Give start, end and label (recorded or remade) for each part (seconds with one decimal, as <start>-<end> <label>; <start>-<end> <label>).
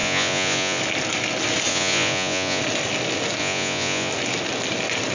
0.0-0.8 remade; 0.8-1.7 recorded; 1.7-2.6 remade; 2.6-3.4 recorded; 3.4-4.1 remade; 4.1-5.1 recorded